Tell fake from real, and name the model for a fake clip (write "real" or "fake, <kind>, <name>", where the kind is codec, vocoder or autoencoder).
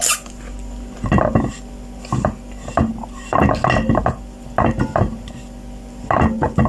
real